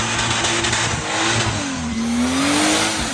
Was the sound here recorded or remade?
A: recorded